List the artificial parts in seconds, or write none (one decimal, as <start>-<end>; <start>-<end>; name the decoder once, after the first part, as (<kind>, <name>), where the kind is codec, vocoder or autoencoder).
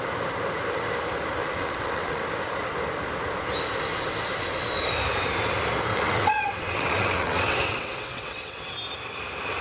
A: 1.4-2.2 (vocoder, WaveNeXt); 5.9-8.7